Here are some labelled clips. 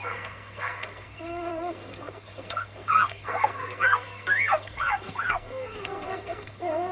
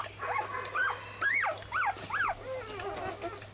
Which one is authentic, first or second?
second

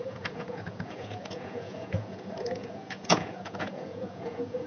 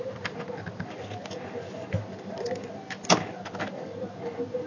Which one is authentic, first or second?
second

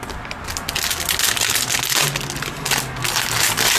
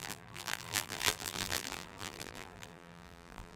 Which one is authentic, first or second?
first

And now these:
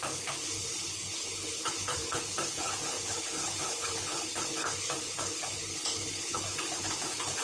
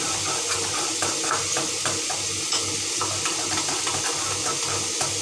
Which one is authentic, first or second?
second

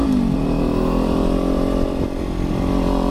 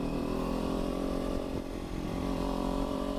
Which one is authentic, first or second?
first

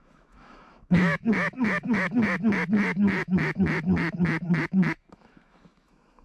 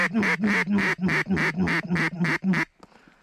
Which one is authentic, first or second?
second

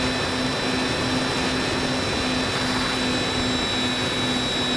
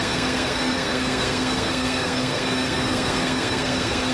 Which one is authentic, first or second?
first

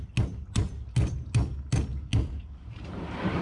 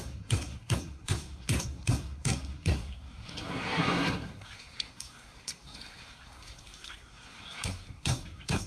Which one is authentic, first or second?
first